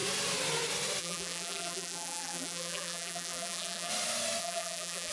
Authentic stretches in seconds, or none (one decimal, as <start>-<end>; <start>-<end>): 0.0-1.0; 3.9-4.4